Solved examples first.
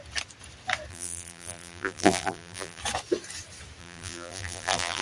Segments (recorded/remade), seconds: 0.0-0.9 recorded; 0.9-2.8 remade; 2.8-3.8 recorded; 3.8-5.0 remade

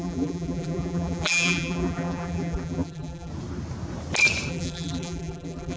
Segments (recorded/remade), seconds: 0.0-3.3 remade; 3.3-4.5 recorded; 4.5-5.8 remade

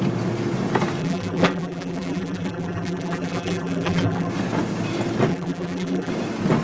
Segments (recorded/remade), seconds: 0.0-1.0 recorded; 1.0-4.3 remade; 4.3-5.3 recorded; 5.3-6.1 remade; 6.1-6.6 recorded

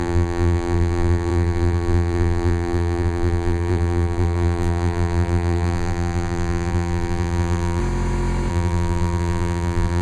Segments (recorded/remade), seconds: 0.0-7.8 remade; 7.8-8.5 recorded; 8.5-10.0 remade

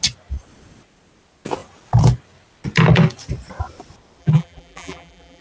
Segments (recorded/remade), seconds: 0.0-4.2 recorded; 4.2-5.4 remade

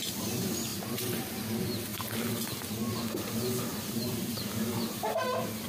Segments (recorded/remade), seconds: 0.0-0.7 recorded; 0.7-1.2 remade; 1.2-1.9 recorded; 1.9-2.7 remade; 2.7-3.7 recorded; 3.7-4.4 remade; 4.4-5.7 recorded

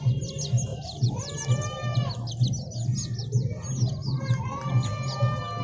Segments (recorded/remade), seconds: 0.0-0.7 recorded; 0.7-2.1 remade; 2.1-4.0 recorded; 4.0-4.7 remade; 4.7-5.6 recorded

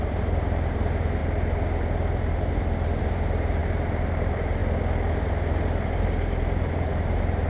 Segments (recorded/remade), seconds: 0.0-1.2 remade; 1.2-3.0 recorded; 3.0-4.6 remade; 4.6-5.1 recorded; 5.1-7.5 remade